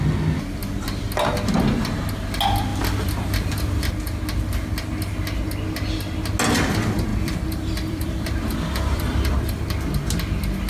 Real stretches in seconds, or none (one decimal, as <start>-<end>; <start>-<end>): 0.0-2.7; 4.2-7.1; 9.6-10.7